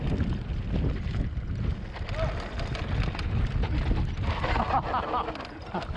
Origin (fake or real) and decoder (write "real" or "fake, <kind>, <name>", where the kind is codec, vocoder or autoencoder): real